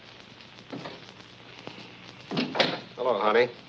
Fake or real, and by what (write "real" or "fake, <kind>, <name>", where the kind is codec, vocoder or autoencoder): real